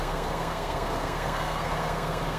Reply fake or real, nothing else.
fake